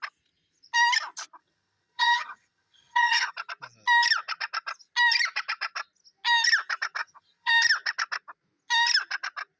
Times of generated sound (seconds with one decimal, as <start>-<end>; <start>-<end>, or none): 1.4-3.3; 7.0-7.5

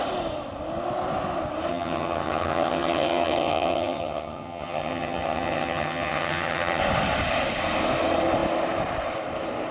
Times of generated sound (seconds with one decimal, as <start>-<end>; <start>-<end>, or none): 1.7-6.8